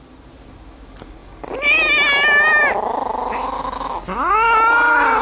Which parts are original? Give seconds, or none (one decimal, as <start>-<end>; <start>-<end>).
0.0-5.2